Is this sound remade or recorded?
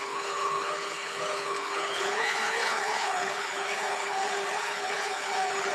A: remade